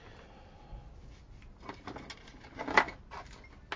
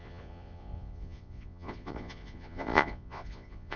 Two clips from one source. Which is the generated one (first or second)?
second